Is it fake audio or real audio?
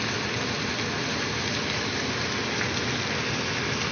real